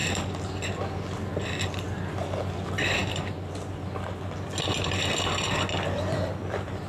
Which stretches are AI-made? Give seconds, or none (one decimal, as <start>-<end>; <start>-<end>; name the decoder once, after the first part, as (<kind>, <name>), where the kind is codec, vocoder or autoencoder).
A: none